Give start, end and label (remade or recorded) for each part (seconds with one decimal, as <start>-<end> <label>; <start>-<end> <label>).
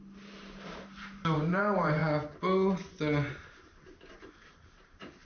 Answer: 0.0-2.0 remade; 2.0-4.1 recorded; 4.1-5.2 remade